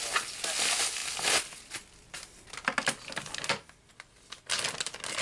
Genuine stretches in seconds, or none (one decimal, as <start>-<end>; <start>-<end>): 0.0-5.2

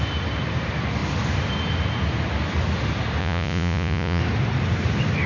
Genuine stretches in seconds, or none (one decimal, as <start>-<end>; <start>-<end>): 0.0-3.2; 4.2-5.3

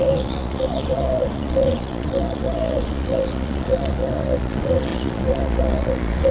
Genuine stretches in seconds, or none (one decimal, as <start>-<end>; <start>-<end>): none

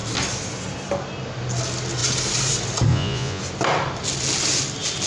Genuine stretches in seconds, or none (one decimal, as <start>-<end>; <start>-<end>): 0.0-2.9; 3.4-5.1

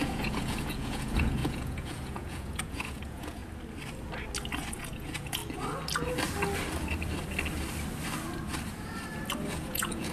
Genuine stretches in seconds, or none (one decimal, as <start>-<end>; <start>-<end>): 3.4-4.7; 5.4-9.5

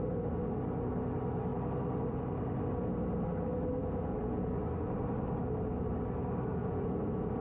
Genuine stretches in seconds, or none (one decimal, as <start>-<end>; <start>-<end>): 0.0-3.8; 4.6-6.6

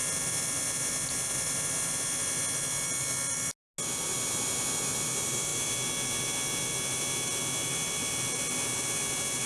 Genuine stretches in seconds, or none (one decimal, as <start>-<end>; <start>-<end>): 0.0-9.5